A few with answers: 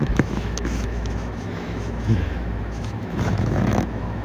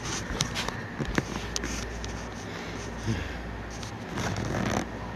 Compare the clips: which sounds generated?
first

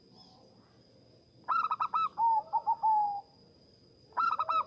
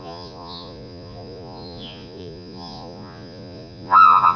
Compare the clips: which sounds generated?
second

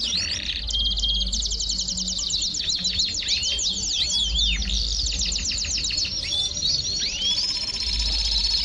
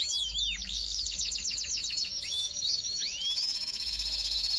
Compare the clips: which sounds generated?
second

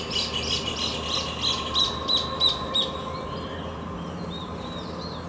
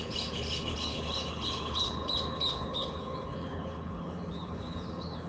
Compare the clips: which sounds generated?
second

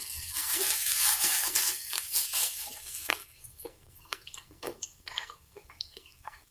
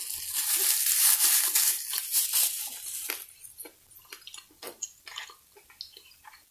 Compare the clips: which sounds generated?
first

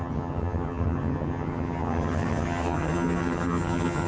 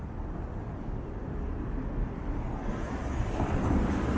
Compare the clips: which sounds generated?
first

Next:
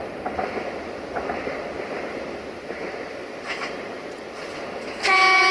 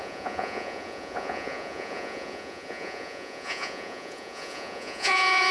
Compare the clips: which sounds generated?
second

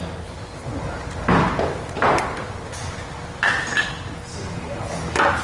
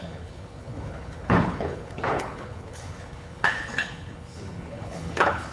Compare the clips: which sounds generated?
second